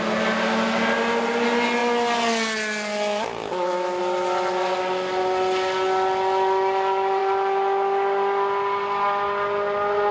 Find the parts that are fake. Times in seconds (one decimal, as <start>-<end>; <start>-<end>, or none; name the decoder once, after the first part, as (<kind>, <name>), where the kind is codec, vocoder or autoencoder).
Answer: none